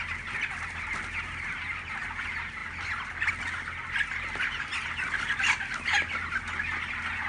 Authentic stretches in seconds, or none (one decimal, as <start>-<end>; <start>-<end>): 0.0-7.3